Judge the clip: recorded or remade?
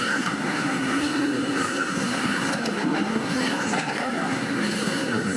remade